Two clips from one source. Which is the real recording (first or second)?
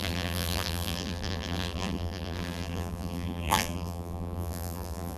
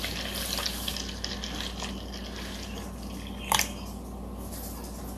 second